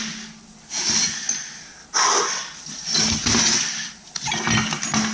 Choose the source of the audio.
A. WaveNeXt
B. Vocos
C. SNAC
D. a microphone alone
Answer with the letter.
D